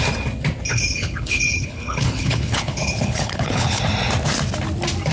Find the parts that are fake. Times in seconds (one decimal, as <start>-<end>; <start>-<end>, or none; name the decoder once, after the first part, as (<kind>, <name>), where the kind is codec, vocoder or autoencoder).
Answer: 0.7-3.8 (codec, HILCodec)